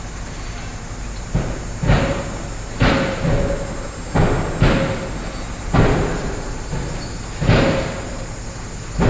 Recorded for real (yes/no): yes